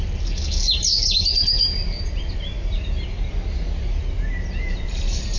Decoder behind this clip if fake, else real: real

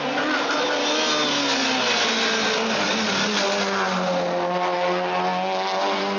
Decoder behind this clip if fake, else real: real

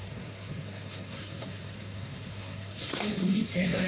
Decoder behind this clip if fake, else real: fake, codec, SNAC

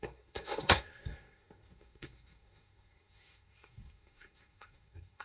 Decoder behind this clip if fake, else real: fake, codec, SNAC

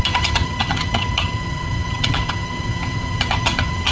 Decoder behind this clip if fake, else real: fake, vocoder, HiFi-GAN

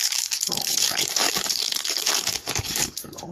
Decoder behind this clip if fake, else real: fake, codec, DAC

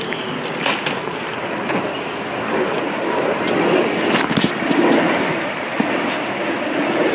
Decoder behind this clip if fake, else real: real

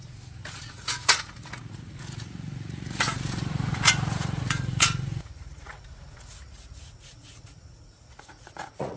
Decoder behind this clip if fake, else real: fake, vocoder, Vocos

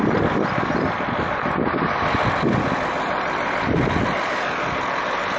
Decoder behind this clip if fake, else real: real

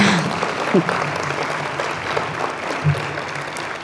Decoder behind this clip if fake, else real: real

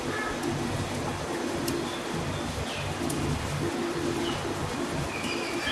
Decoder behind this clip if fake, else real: real